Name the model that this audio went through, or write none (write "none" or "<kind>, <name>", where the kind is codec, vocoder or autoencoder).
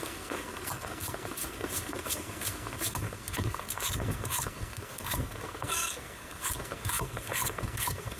codec, SNAC